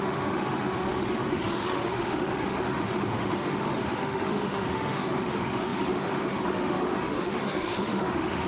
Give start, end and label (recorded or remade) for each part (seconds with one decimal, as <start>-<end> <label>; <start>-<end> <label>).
0.0-8.5 remade